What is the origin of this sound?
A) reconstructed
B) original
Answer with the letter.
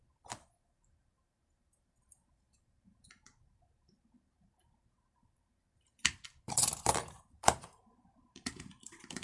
A